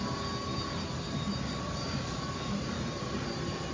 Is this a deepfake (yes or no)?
no